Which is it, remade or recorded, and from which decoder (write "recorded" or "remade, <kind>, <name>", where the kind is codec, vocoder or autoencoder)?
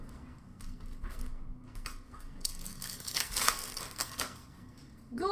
remade, codec, SNAC